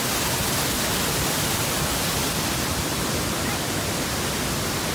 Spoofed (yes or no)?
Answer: no